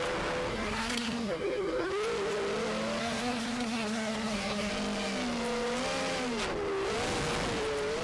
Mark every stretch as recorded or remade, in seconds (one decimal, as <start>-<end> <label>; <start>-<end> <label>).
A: 0.0-0.5 recorded; 0.5-1.9 remade; 1.9-3.0 recorded; 3.0-4.7 remade; 4.7-8.0 recorded